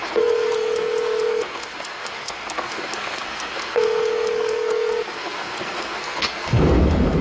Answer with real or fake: fake